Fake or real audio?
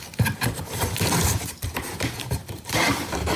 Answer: fake